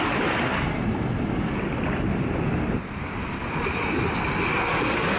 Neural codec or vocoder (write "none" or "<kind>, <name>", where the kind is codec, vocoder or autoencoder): none